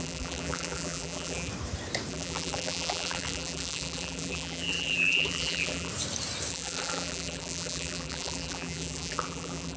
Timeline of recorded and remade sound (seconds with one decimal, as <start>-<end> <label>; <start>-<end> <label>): 0.0-1.5 remade; 1.5-2.1 recorded; 2.1-5.9 remade; 5.9-6.5 recorded; 6.5-9.8 remade